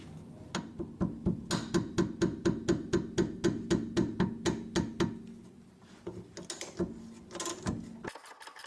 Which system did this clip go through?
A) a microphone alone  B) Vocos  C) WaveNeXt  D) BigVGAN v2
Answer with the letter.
A